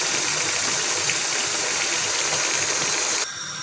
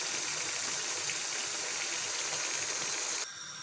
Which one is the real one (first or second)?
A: second